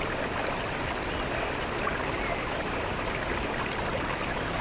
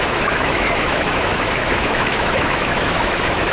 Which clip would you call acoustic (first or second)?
first